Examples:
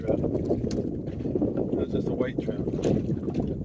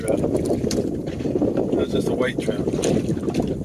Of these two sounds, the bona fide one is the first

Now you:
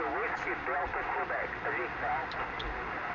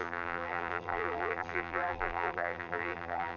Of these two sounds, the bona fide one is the first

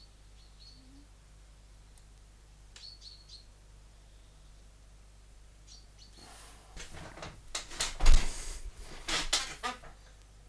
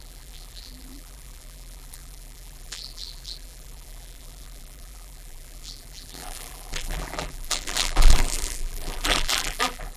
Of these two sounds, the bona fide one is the first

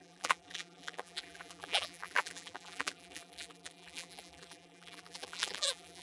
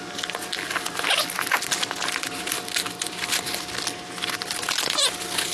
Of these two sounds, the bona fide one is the second